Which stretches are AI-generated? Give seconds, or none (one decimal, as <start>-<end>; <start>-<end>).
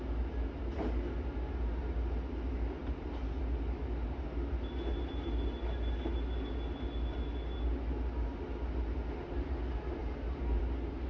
none